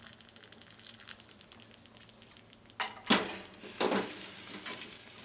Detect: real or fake real